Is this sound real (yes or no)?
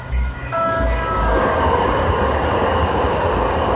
no